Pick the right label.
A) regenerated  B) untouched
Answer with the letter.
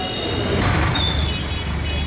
B